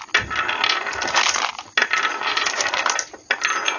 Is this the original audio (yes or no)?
yes